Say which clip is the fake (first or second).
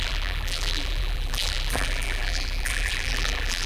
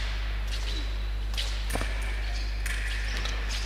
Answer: first